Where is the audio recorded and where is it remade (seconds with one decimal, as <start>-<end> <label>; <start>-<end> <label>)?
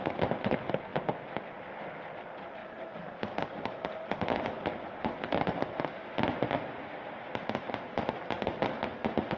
0.0-9.4 recorded